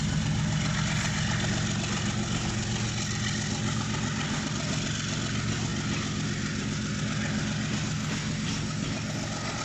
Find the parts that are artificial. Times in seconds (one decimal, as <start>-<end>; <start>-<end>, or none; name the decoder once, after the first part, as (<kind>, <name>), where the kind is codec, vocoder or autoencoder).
none